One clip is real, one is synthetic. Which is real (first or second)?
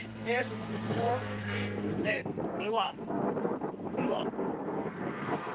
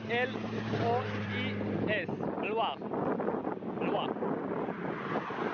second